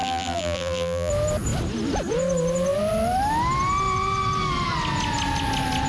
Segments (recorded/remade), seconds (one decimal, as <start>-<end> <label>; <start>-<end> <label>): 0.0-1.1 remade; 1.1-5.9 recorded